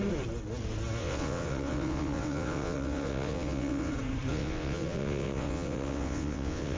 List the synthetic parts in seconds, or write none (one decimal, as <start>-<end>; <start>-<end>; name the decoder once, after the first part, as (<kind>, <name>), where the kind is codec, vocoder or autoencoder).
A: 1.0-3.9 (vocoder, WaveNeXt); 4.3-6.8